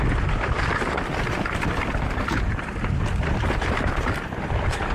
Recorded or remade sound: recorded